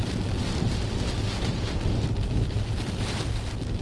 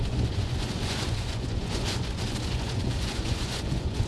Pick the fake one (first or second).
second